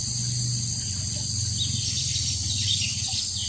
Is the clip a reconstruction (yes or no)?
no